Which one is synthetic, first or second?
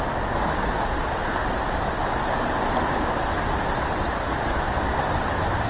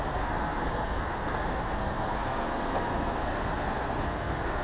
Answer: second